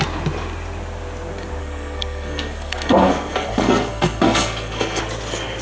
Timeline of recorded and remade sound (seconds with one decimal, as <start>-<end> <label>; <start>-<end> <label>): 0.0-1.6 recorded; 1.6-5.0 remade; 5.0-5.6 recorded